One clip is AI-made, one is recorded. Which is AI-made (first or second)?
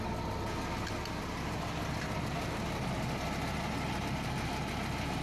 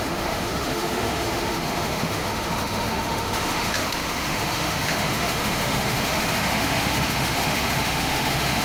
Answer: second